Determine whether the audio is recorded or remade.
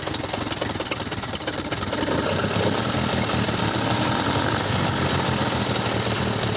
recorded